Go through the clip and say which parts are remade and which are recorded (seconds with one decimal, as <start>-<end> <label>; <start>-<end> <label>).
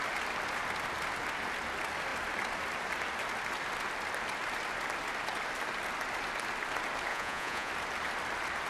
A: 0.0-7.1 recorded; 7.1-7.7 remade; 7.7-8.7 recorded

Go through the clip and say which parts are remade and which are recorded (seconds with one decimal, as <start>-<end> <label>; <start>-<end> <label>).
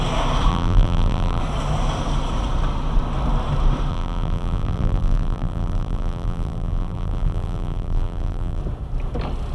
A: 0.0-0.5 recorded; 0.5-1.4 remade; 1.4-3.9 recorded; 3.9-8.6 remade; 8.6-9.5 recorded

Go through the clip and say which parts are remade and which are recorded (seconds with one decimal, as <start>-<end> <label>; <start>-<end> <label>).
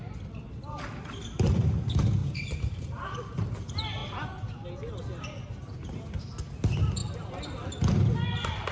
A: 0.0-2.2 recorded; 2.2-3.1 remade; 3.1-7.0 recorded; 7.0-7.5 remade; 7.5-8.7 recorded